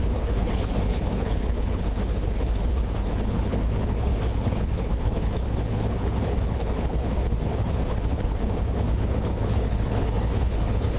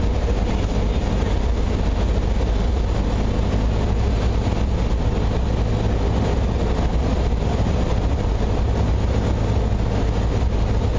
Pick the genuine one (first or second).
second